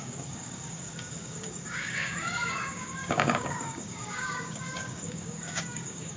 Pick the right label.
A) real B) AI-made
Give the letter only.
B